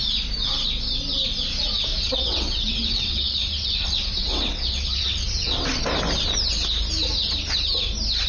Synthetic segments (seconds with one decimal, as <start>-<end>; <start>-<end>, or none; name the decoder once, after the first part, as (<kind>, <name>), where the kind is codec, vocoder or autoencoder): 1.9-5.8 (vocoder, WaveNeXt)